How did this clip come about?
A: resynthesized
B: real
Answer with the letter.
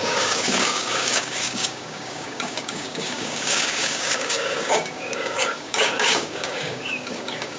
A